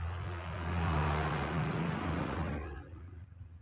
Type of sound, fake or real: fake